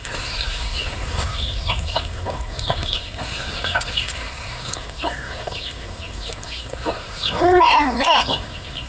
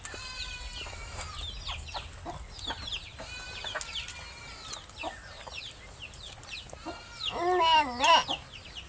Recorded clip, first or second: second